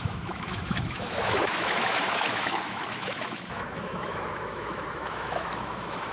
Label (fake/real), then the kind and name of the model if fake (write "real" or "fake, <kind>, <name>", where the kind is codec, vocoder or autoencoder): fake, autoencoder, DAC-VAE